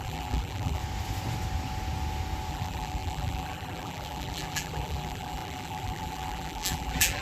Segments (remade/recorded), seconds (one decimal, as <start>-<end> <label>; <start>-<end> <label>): 0.0-0.8 remade; 0.8-2.5 recorded; 2.5-7.2 remade